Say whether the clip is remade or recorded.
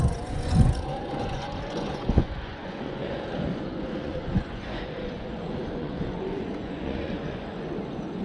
remade